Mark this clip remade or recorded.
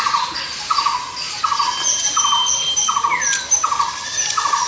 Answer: recorded